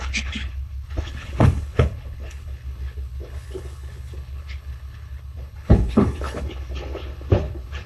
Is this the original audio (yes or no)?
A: no